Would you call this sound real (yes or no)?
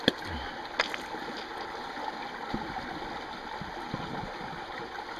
yes